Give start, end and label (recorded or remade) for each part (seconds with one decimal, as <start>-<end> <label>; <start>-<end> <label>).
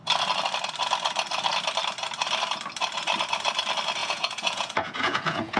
0.0-4.0 recorded; 4.0-5.6 remade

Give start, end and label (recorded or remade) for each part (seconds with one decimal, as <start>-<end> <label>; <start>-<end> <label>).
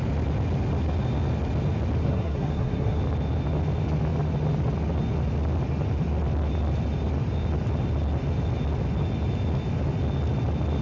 0.0-2.0 recorded; 2.0-3.0 remade; 3.0-10.8 recorded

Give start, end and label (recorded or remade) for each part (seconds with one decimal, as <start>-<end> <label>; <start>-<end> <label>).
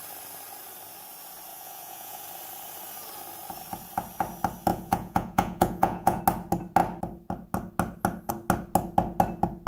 0.0-1.5 recorded; 1.5-2.2 remade; 2.2-4.7 recorded; 4.7-6.2 remade; 6.2-9.7 recorded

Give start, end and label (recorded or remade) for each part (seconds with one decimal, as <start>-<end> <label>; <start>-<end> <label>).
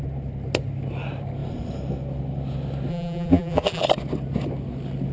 0.0-2.9 recorded; 2.9-3.8 remade; 3.8-5.1 recorded